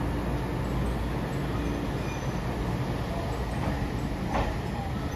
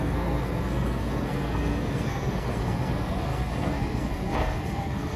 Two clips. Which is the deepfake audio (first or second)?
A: second